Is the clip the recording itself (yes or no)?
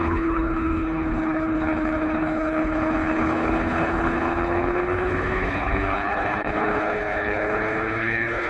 no